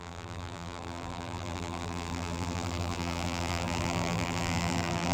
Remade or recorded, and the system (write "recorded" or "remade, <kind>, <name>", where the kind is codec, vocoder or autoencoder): remade, vocoder, BigVGAN v2